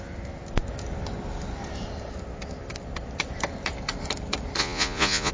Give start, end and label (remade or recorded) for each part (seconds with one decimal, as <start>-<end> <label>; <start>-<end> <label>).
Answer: 0.0-4.6 recorded; 4.6-5.3 remade